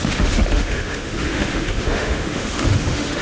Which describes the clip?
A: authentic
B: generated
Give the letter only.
B